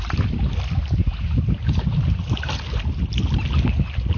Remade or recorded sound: recorded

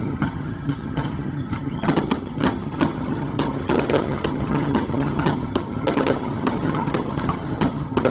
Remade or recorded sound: remade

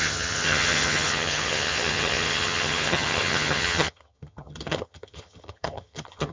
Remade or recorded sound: remade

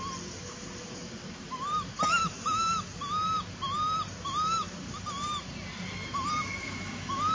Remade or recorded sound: recorded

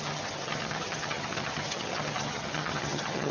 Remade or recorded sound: remade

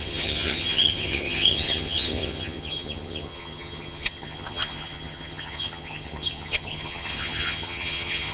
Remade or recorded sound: remade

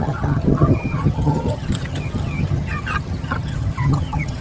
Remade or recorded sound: remade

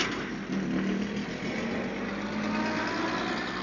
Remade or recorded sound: recorded